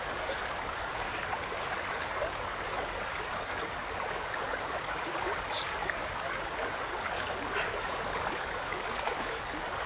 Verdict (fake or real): fake